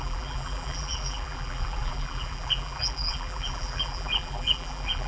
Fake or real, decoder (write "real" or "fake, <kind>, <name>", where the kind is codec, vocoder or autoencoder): fake, vocoder, BigVGAN v2